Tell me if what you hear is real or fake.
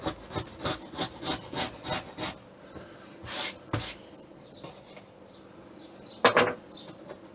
real